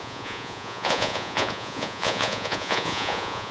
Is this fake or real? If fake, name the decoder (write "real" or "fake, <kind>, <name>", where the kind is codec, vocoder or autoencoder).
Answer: fake, vocoder, Vocos